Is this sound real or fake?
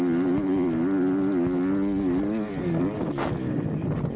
real